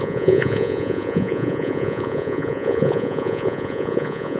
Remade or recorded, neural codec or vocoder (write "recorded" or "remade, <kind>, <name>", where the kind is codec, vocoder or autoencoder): remade, vocoder, Vocos